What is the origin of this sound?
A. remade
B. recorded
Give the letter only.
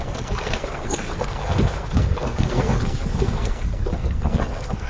A